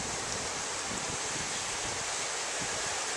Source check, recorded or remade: recorded